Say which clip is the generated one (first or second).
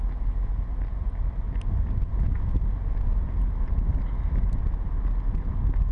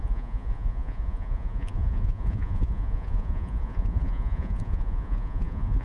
second